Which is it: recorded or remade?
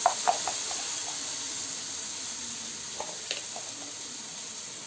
recorded